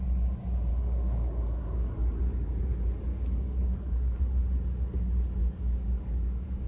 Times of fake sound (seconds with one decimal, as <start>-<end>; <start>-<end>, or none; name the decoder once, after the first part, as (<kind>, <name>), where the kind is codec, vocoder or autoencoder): 0.7-2.2 (codec, DAC); 3.1-4.2; 5.4-6.7